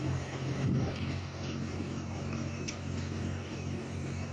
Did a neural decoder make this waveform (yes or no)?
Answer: yes